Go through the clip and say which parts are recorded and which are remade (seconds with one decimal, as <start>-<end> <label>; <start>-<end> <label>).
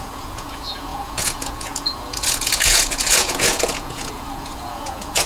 0.0-5.3 remade